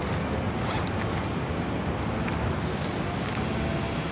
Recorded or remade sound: recorded